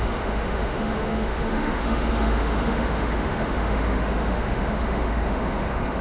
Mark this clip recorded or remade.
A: remade